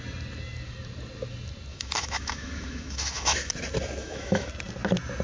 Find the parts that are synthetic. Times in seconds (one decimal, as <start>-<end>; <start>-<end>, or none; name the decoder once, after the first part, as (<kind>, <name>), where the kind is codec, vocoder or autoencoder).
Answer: 1.7-3.5 (autoencoder, DAC-VAE); 4.0-4.5